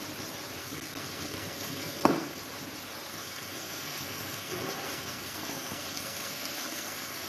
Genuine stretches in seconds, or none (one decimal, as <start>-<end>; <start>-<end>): 0.0-0.6; 2.4-3.1